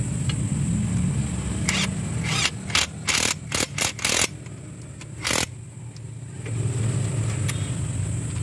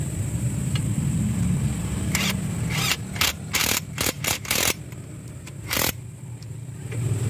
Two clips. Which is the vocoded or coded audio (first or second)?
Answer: second